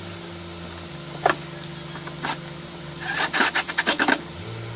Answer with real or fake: real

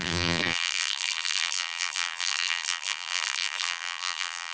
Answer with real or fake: fake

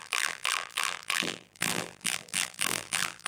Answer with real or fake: fake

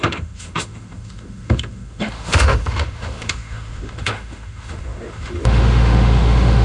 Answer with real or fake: fake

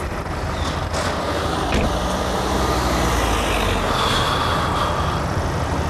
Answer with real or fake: real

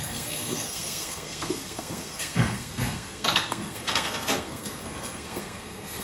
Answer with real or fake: fake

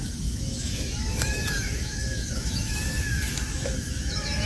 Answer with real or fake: fake